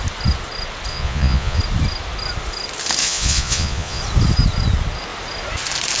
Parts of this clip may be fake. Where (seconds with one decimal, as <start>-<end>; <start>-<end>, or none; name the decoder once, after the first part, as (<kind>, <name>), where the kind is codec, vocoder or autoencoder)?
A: 0.9-1.6 (vocoder, Vocos); 3.0-4.0